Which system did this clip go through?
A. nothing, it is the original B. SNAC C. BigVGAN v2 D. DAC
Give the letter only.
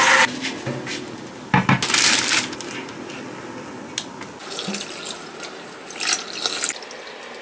A